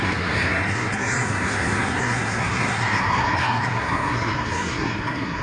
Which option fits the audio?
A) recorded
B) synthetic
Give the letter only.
B